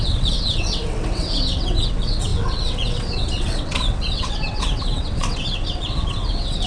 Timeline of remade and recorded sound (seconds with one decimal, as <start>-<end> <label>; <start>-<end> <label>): 0.0-6.7 remade